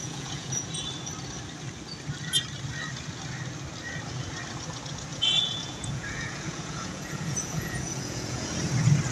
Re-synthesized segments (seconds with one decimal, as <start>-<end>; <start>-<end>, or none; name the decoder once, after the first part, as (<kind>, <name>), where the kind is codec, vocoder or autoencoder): 0.0-0.7 (vocoder, Vocos); 5.1-8.5